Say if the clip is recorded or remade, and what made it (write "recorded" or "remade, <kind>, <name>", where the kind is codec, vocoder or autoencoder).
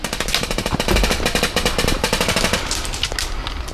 recorded